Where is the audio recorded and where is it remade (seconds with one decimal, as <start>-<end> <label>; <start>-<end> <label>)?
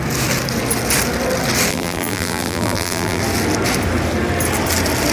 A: 0.0-1.7 recorded; 1.7-3.2 remade; 3.2-5.1 recorded